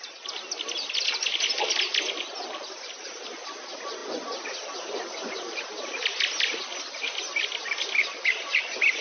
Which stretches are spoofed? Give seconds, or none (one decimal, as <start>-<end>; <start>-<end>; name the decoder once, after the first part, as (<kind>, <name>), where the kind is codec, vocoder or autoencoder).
none